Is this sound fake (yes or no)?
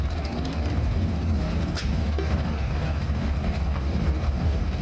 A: yes